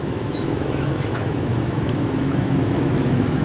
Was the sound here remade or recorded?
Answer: remade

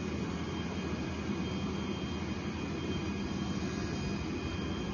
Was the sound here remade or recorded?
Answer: recorded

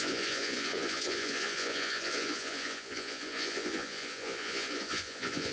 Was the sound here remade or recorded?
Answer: remade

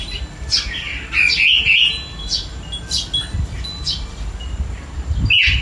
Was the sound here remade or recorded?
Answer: recorded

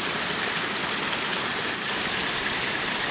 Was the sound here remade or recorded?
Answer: recorded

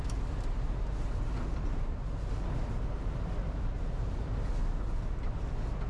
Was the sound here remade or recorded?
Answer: recorded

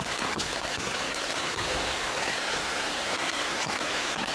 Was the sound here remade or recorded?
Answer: remade